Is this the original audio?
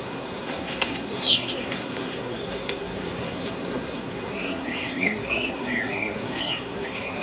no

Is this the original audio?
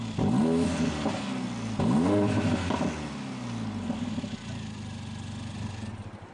yes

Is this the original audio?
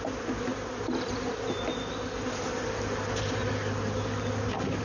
yes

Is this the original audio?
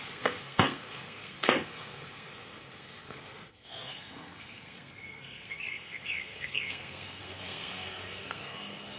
no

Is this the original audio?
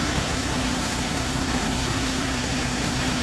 no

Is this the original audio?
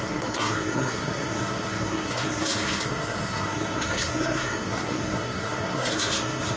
no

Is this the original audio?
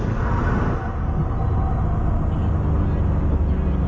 yes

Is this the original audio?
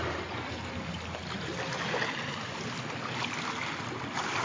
yes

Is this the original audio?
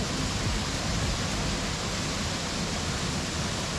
yes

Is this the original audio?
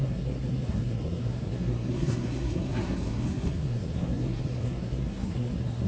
no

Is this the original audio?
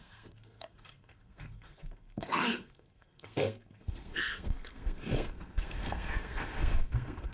no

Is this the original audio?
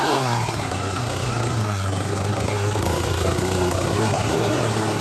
no